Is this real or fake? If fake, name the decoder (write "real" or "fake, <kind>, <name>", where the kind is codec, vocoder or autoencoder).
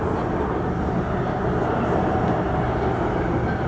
real